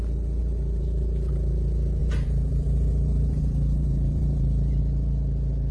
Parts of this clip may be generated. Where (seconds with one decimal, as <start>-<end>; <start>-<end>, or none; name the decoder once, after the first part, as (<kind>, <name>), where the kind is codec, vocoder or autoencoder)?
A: 0.4-1.3 (vocoder, BigVGAN v2); 2.0-4.8